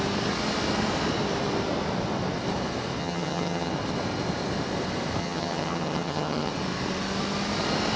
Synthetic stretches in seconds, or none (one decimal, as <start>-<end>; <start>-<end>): 3.0-3.7; 5.2-6.5